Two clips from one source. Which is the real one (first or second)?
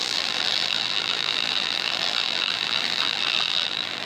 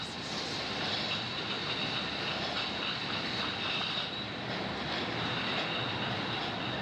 second